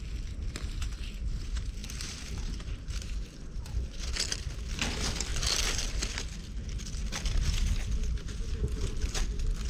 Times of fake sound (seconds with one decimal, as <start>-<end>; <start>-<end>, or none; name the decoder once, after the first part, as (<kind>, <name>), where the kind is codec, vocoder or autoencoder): 1.8-3.7 (vocoder, BigVGAN v2)